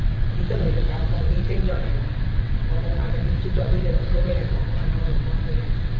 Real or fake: fake